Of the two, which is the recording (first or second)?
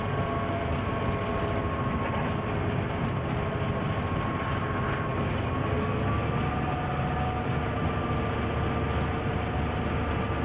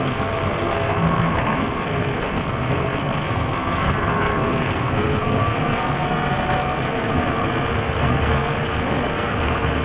first